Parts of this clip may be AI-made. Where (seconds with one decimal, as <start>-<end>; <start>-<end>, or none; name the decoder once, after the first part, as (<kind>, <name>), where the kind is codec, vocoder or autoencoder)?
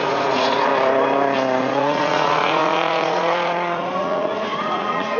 0.0-0.7 (vocoder, Vocos); 1.6-5.2